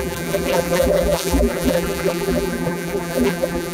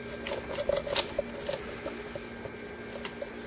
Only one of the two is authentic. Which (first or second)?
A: second